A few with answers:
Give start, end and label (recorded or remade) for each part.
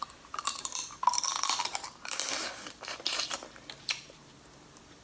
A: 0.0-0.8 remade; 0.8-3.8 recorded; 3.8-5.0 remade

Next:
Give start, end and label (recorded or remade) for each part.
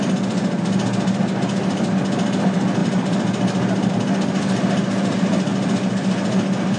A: 0.0-2.8 recorded; 2.8-3.9 remade; 3.9-6.8 recorded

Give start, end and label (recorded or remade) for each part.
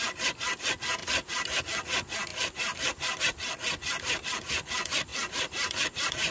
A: 0.0-1.0 recorded; 1.0-1.6 remade; 1.6-2.3 recorded; 2.3-3.2 remade; 3.2-5.1 recorded; 5.1-6.3 remade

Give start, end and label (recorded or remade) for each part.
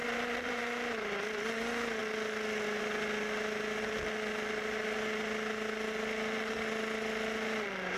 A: 0.0-0.6 remade; 0.6-8.0 recorded